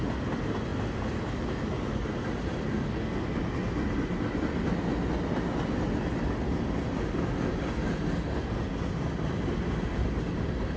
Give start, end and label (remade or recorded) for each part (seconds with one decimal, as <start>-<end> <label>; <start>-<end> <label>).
0.0-10.8 recorded

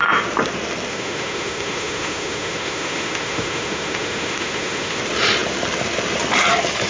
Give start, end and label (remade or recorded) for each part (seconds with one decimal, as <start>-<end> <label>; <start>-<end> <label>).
0.0-0.9 recorded; 0.9-5.0 remade; 5.0-6.9 recorded

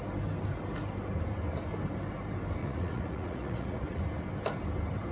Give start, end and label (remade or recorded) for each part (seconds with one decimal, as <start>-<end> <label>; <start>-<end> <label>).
0.0-2.6 recorded; 2.6-4.0 remade; 4.0-5.1 recorded

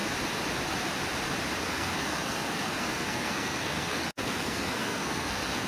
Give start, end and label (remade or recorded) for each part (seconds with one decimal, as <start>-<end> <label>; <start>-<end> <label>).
0.0-1.6 recorded; 1.6-5.7 remade